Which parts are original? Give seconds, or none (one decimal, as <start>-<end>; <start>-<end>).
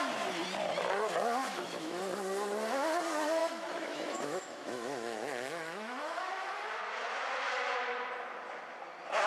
0.0-1.4; 2.0-3.4; 6.3-9.3